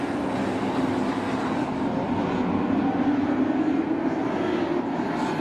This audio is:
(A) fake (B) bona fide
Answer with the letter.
B